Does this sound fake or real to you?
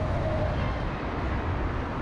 real